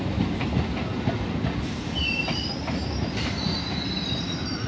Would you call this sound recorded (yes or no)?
no